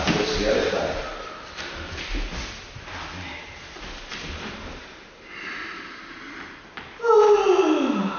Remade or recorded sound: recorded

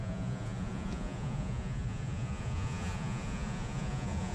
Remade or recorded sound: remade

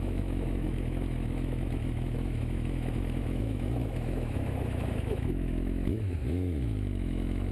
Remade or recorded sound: remade